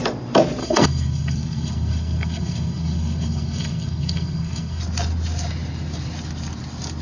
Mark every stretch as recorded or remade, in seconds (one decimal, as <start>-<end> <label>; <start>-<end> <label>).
0.0-0.6 recorded; 0.6-4.8 remade; 4.8-7.0 recorded